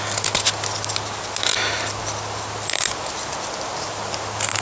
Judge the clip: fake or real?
real